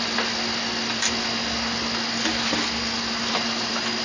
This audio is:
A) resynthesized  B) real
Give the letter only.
B